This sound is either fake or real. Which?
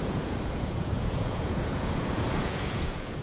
fake